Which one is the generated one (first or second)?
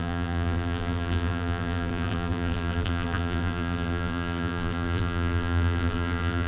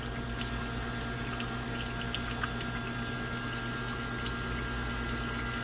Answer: first